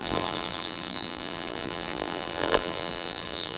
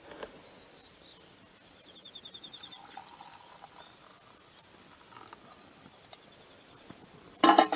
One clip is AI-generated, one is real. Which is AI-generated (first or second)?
first